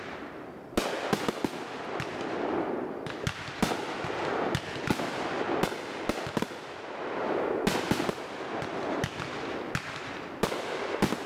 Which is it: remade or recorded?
recorded